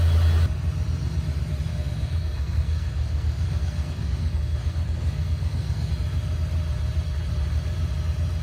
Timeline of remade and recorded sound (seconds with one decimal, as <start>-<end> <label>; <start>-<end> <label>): 0.0-1.7 recorded; 1.7-5.9 remade; 5.9-8.4 recorded